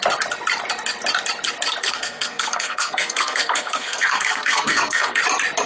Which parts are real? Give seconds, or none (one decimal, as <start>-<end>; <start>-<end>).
0.0-1.8; 5.2-5.7